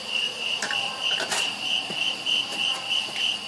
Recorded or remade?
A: remade